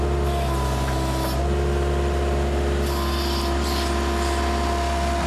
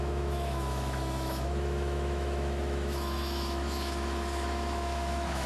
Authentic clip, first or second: first